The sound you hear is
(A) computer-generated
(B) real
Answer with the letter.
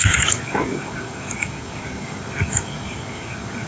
A